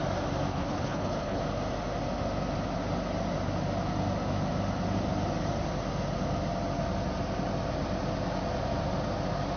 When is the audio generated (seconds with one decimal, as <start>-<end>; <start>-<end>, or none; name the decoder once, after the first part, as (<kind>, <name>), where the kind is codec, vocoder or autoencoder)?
0.5-1.4 (codec, HILCodec)